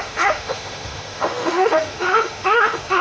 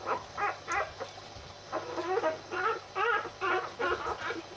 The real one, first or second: second